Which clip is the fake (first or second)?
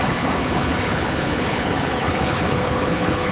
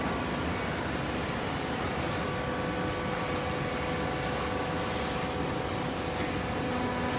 first